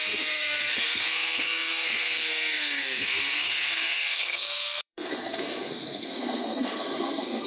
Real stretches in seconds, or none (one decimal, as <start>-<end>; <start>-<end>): none